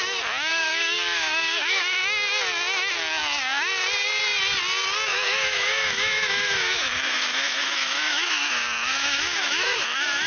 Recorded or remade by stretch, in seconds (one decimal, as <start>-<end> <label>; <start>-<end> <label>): 0.0-0.5 recorded; 0.5-1.8 remade; 1.8-5.1 recorded; 5.1-10.3 remade